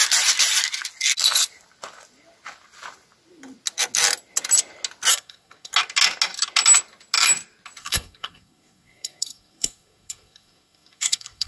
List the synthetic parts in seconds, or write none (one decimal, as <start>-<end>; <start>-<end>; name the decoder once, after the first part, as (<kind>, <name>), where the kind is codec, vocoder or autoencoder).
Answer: 5.1-5.7 (codec, SNAC); 7.8-11.5